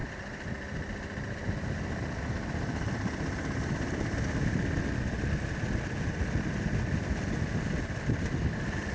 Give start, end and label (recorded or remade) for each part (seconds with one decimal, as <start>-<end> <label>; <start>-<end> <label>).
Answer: 0.0-8.9 recorded